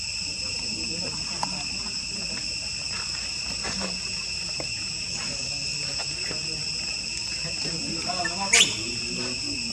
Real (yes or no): yes